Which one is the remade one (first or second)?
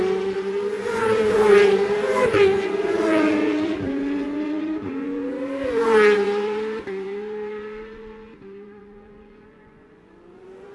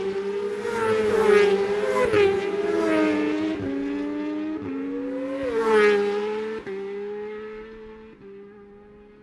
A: first